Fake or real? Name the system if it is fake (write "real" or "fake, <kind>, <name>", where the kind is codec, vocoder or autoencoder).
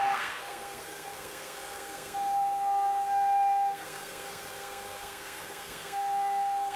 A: fake, codec, SNAC